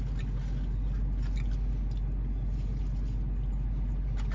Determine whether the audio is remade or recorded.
recorded